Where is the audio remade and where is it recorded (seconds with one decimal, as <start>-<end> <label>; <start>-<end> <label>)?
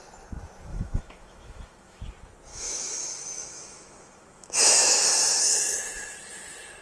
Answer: 0.0-0.7 recorded; 0.7-2.0 remade; 2.0-2.5 recorded; 2.5-5.4 remade; 5.4-6.8 recorded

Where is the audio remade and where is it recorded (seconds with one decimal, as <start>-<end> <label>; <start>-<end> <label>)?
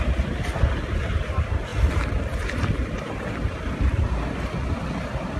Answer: 0.0-5.4 recorded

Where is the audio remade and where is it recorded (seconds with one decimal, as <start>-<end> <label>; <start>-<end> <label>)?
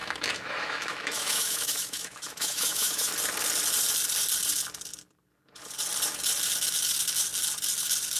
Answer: 0.0-3.1 remade; 3.1-8.2 recorded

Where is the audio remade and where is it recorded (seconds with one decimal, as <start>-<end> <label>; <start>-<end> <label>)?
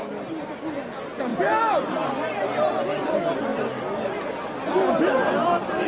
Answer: 0.0-5.9 recorded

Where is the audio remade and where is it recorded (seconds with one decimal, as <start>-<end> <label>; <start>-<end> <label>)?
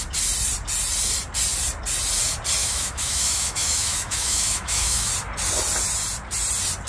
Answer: 0.0-2.6 recorded; 2.6-5.1 remade; 5.1-6.9 recorded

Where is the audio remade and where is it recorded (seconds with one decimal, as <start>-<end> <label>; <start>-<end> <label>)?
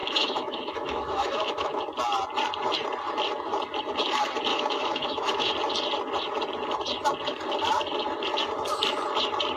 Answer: 0.0-1.8 remade; 1.8-4.5 recorded; 4.5-5.5 remade; 5.5-9.6 recorded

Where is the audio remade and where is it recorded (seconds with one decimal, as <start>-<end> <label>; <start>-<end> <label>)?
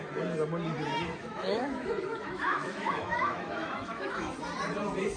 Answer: 0.0-1.2 recorded; 1.2-4.3 remade; 4.3-5.2 recorded